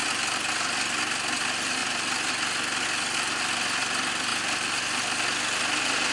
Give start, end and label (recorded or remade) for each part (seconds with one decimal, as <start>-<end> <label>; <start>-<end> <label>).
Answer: 0.0-6.1 recorded